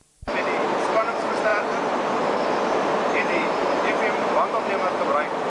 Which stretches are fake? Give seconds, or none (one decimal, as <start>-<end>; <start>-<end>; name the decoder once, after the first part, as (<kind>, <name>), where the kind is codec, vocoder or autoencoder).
none